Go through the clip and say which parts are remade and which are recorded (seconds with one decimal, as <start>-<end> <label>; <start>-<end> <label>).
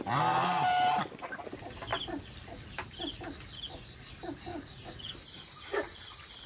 0.0-4.5 recorded; 4.5-5.1 remade; 5.1-6.5 recorded